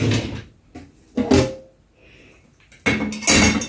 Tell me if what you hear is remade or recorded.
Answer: recorded